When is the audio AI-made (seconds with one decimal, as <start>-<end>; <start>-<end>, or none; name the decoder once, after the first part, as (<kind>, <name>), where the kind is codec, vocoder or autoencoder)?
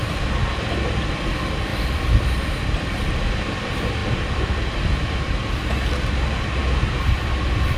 1.7-2.3 (vocoder, BigVGAN v2); 4.0-5.7; 6.6-7.8